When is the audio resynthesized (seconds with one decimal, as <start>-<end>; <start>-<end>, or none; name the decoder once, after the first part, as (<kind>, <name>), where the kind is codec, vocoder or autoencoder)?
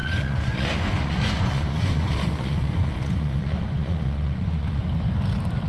0.0-4.8 (vocoder, Vocos)